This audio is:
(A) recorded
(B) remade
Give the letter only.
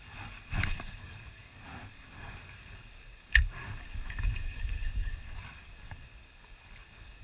B